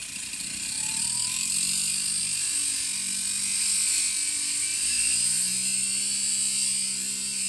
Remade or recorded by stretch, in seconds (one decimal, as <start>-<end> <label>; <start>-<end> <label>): 0.0-2.2 remade; 2.2-4.7 recorded; 4.7-6.2 remade; 6.2-7.5 recorded